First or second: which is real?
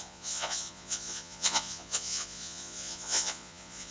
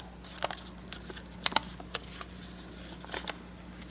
second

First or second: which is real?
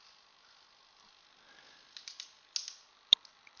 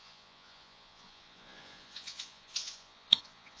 first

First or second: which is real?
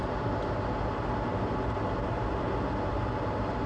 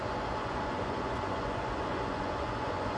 first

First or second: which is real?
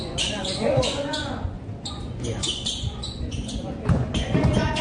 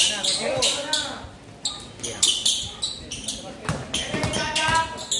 second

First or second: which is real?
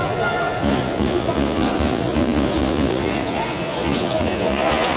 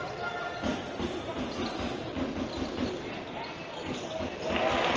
second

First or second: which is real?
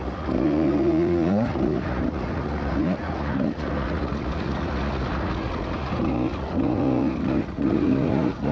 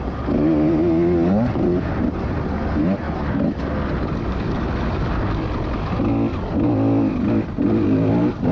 second